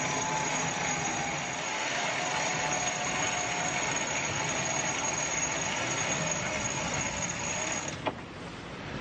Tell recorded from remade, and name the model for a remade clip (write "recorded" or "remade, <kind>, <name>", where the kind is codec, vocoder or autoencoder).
recorded